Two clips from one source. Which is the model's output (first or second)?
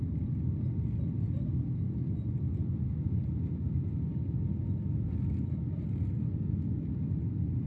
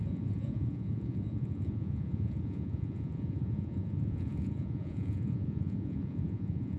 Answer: second